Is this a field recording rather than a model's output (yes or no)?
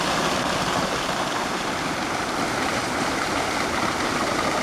yes